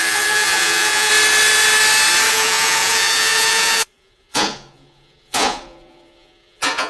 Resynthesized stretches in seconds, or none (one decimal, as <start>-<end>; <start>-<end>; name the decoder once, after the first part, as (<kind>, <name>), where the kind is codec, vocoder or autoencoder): 0.0-1.1 (vocoder, Vocos); 2.3-6.9